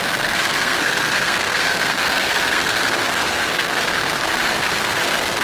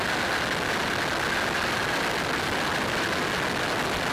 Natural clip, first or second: second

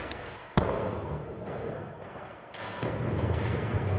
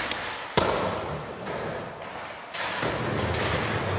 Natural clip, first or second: second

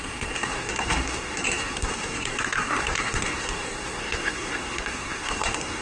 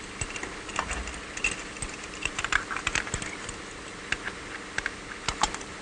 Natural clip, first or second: second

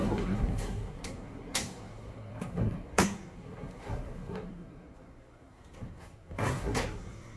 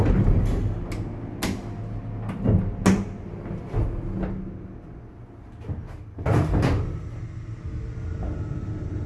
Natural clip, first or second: second